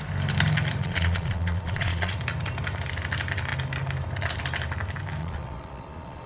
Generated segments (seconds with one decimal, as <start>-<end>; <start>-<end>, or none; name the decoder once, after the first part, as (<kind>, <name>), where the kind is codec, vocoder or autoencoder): 0.8-2.2 (vocoder, Vocos); 5.2-6.3